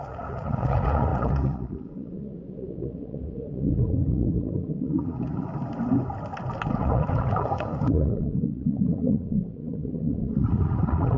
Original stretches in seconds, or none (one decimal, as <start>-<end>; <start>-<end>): 5.5-6.8